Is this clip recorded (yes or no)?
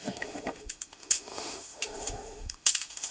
no